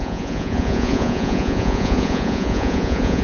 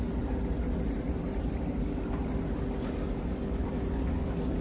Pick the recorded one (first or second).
second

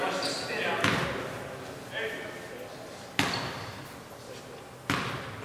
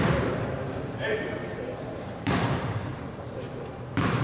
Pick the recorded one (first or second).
first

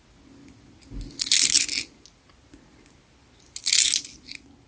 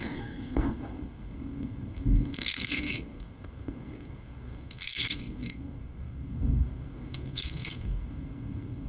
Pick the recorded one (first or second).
first